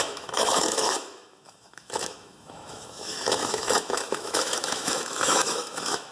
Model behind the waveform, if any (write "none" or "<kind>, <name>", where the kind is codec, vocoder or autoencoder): autoencoder, DAC-VAE